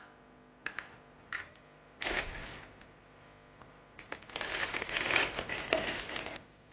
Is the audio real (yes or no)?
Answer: yes